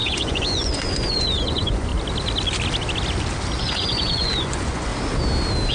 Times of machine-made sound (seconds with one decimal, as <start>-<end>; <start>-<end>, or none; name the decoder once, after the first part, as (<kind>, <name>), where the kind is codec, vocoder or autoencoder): 0.0-1.9 (vocoder, Vocos); 3.6-4.9